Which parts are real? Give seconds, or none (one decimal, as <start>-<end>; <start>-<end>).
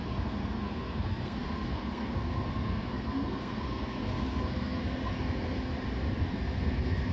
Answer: 5.7-6.2